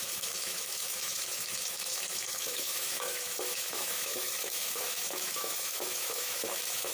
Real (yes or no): no